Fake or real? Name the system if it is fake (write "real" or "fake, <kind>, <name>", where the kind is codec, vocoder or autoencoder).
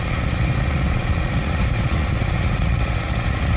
fake, vocoder, Vocos